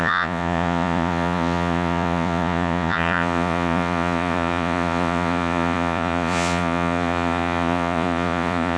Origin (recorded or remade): remade